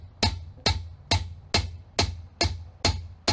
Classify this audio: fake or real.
real